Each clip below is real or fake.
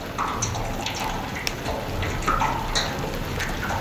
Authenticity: real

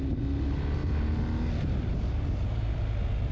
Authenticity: real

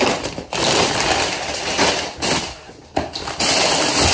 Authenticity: real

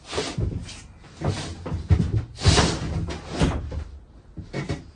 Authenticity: real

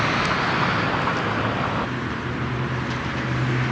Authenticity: real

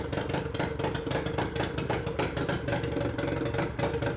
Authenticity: real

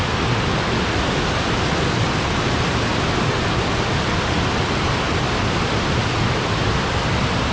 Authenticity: real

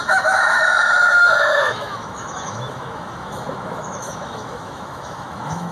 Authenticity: fake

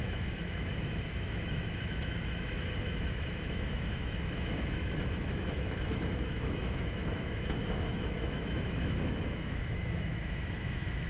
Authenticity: fake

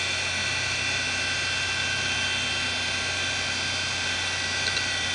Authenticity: real